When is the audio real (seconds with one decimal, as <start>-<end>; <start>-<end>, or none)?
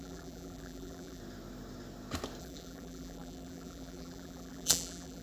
1.2-2.4